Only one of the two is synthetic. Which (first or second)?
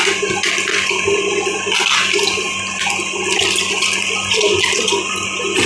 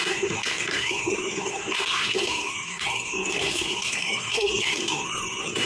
second